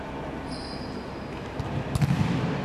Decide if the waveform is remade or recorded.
recorded